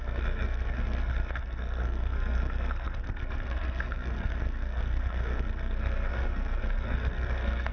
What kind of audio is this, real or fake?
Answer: fake